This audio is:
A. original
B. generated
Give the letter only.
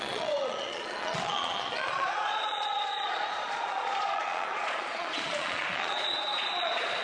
B